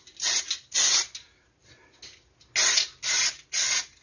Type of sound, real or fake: real